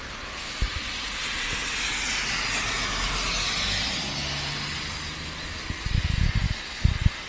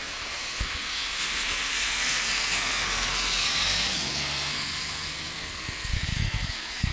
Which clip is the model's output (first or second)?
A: second